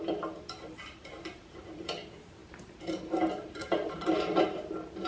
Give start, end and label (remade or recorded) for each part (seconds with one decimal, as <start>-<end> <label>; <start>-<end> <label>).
0.0-5.1 remade